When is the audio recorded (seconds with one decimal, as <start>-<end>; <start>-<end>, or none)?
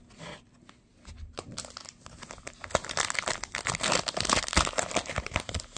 0.0-5.8